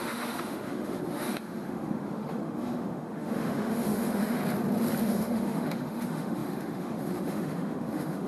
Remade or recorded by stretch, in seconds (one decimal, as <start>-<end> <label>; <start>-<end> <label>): 0.0-4.4 remade; 4.4-5.0 recorded; 5.0-8.3 remade